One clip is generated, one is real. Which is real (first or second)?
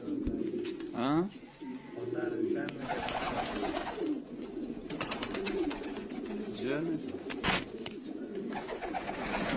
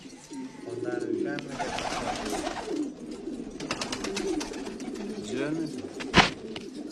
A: second